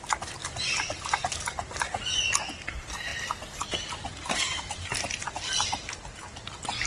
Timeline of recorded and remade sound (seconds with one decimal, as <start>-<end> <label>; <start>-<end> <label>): 0.0-0.4 recorded; 0.4-2.0 remade; 2.0-3.1 recorded; 3.1-5.9 remade; 5.9-6.9 recorded